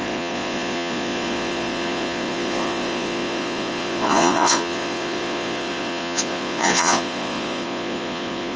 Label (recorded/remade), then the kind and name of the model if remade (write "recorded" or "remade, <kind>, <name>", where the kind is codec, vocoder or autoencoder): remade, vocoder, Vocos